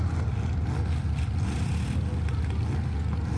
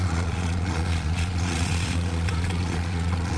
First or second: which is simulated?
second